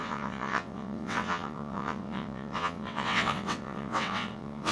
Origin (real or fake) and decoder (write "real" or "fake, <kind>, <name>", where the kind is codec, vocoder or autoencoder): fake, vocoder, WaveNeXt